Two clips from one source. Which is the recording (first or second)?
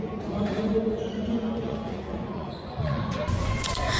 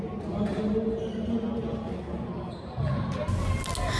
second